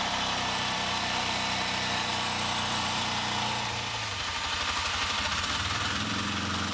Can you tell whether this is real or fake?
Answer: fake